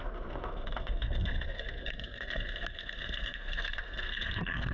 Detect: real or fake fake